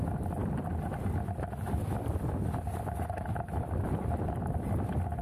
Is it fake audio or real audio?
real